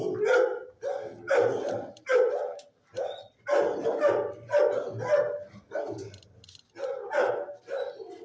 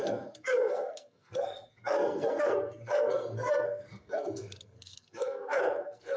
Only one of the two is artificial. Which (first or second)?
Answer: second